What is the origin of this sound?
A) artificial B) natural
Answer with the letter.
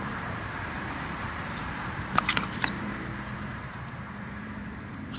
A